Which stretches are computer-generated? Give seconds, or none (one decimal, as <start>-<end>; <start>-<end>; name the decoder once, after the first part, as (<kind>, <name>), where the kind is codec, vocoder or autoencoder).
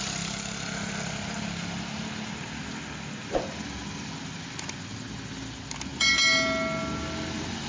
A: none